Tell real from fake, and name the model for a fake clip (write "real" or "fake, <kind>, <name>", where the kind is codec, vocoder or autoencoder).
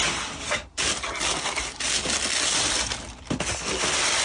real